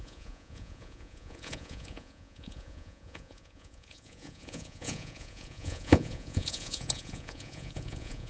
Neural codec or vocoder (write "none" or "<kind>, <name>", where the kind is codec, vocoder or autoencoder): vocoder, Vocos